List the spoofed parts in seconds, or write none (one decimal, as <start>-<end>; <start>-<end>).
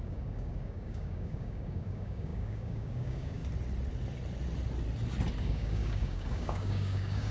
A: 0.0-3.4; 5.4-7.3